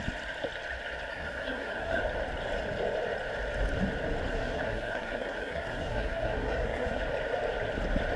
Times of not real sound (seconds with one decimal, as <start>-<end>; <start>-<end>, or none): 1.1-2.0; 4.3-7.0